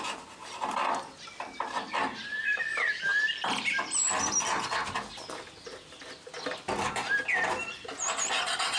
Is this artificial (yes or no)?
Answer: no